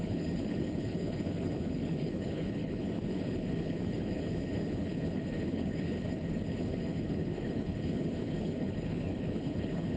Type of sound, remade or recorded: remade